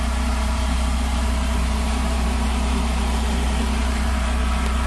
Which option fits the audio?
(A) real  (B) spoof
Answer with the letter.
B